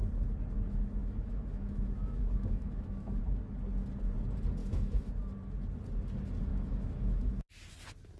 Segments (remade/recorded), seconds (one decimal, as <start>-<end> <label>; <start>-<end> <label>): 0.0-1.0 recorded; 1.0-3.2 remade; 3.2-4.6 recorded; 4.6-5.1 remade; 5.1-6.5 recorded; 6.5-7.3 remade; 7.3-8.2 recorded